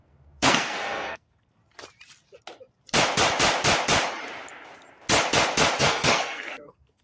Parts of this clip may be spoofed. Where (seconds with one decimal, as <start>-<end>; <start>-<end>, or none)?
0.0-1.6; 5.8-7.0